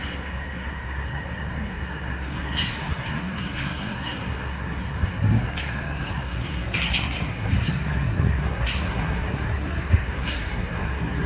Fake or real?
fake